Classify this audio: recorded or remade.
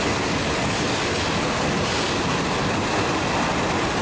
recorded